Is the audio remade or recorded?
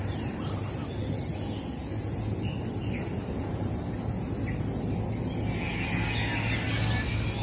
recorded